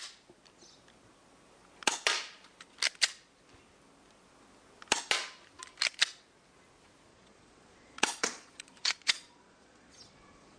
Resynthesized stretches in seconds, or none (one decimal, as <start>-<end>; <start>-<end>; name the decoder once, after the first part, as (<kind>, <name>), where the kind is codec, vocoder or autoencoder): 7.1-10.6 (vocoder, Vocos)